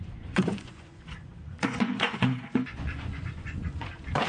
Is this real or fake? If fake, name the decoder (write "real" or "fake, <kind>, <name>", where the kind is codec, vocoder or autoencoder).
fake, vocoder, Vocos